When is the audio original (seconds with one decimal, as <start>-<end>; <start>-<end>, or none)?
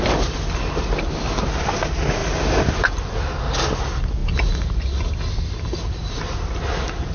0.0-7.1